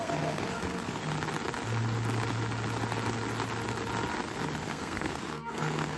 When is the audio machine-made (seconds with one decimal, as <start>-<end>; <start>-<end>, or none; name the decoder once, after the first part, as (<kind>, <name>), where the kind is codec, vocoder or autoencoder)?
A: 0.0-1.0 (codec, SNAC); 4.6-6.0

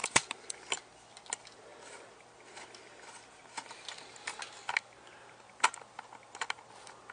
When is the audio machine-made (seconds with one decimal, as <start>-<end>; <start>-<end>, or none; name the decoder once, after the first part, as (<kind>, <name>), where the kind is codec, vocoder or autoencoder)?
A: 0.0-0.8 (vocoder, BigVGAN v2)

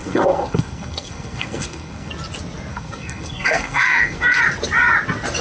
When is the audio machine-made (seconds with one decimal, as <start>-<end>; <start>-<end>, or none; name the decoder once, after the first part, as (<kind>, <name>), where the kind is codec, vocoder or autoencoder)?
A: 0.0-2.1 (codec, SNAC); 2.7-4.4

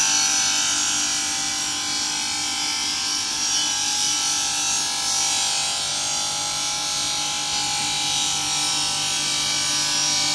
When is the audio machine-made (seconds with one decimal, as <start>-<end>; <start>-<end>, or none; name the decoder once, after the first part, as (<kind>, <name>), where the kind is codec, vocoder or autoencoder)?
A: none

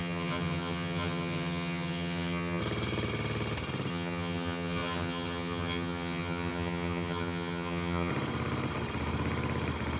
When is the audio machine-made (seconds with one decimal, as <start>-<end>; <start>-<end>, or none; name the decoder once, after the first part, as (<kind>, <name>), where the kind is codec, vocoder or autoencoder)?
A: 0.0-2.6 (vocoder, HiFi-GAN); 3.9-8.1

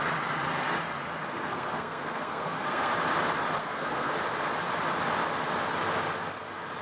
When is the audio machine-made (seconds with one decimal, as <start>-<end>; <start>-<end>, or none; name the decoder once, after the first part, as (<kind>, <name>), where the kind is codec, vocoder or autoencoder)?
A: 1.2-2.9 (codec, SNAC); 3.6-4.1